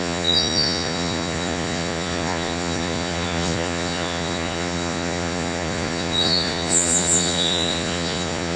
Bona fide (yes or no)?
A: no